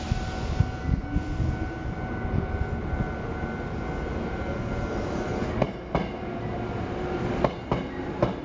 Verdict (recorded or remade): recorded